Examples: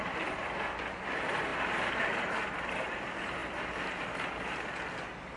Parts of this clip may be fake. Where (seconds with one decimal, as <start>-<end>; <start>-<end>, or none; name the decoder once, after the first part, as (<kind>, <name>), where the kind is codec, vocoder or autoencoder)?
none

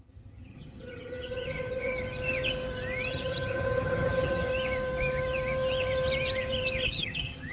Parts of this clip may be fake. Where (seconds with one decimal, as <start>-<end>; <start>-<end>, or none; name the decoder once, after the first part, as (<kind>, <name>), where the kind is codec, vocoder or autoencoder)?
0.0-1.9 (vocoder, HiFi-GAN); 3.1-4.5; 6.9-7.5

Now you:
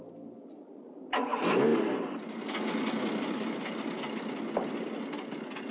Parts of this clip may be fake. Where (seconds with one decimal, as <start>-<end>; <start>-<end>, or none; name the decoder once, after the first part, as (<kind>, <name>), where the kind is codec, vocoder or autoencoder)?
none

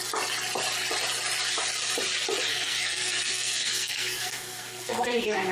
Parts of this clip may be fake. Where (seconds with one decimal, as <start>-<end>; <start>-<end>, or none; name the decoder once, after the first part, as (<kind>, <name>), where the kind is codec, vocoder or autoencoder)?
2.5-5.5 (codec, SNAC)